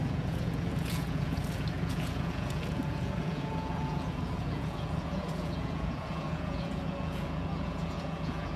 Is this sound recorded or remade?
remade